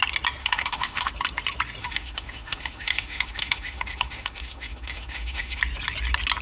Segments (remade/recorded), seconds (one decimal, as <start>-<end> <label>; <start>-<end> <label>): 0.0-0.4 recorded; 0.4-1.1 remade; 1.1-1.8 recorded; 1.8-5.6 remade; 5.6-6.4 recorded